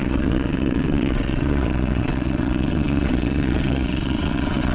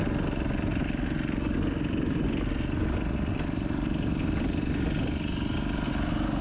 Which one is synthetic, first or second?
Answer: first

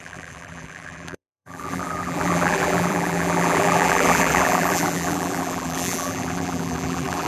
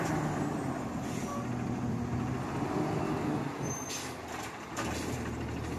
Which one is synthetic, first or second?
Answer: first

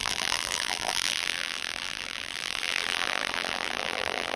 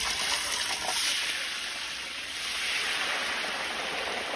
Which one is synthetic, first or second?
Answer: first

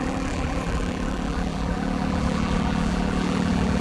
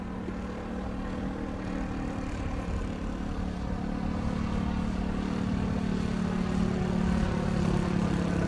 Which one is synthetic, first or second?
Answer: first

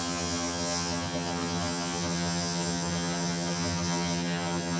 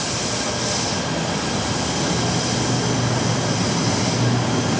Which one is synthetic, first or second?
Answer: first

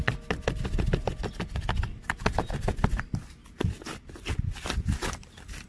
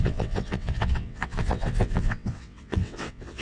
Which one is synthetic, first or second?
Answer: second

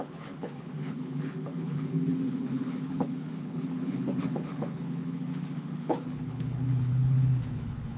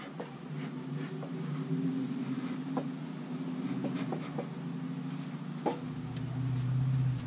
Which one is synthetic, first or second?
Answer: first